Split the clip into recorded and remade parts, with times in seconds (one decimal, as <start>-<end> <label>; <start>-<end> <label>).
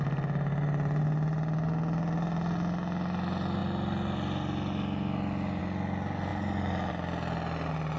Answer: 0.0-8.0 recorded